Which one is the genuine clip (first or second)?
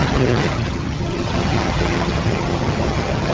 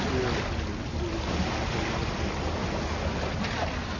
second